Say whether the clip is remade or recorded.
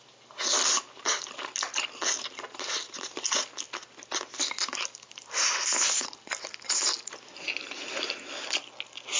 recorded